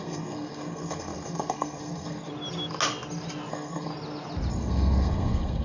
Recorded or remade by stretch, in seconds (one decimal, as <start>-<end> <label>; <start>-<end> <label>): 0.0-2.3 remade; 2.3-3.5 recorded; 3.5-3.9 remade; 3.9-4.5 recorded; 4.5-5.6 remade

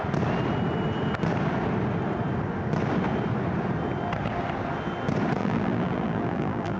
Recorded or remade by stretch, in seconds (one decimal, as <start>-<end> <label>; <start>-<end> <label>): 0.0-5.4 recorded; 5.4-6.8 remade

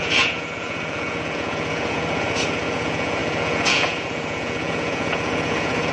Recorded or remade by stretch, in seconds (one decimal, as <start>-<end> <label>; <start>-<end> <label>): 0.0-5.9 remade

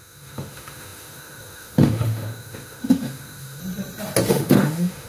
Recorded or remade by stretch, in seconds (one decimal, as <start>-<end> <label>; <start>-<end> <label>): 0.0-3.6 remade; 3.6-4.3 recorded; 4.3-5.1 remade

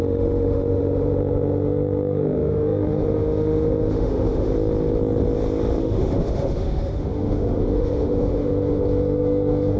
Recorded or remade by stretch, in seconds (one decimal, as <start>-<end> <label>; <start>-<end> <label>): 0.0-4.5 remade; 4.5-5.8 recorded; 5.8-9.8 remade

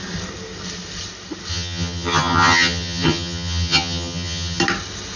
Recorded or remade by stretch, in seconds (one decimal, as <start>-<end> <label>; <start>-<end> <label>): 0.0-1.5 recorded; 1.5-4.6 remade; 4.6-5.2 recorded